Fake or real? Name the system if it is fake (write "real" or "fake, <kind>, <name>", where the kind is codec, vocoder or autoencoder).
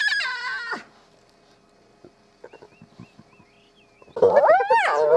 real